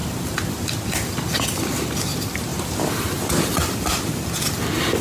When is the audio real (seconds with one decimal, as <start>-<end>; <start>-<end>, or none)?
0.8-2.5; 4.6-5.0